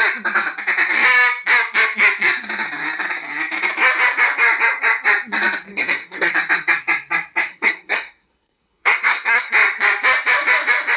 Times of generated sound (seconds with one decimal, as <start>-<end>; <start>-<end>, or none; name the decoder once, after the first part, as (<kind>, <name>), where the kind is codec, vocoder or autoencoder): 5.7-6.3 (codec, SNAC); 7.5-9.5